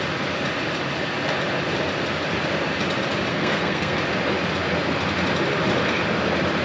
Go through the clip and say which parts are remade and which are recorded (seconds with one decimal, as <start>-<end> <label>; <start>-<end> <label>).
0.0-3.3 recorded; 3.3-4.0 remade; 4.0-6.6 recorded